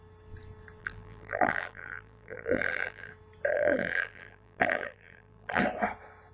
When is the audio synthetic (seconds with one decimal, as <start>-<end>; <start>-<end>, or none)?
0.8-3.1; 3.5-5.6